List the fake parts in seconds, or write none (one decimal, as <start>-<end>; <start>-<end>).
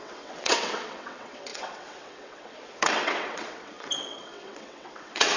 0.0-5.4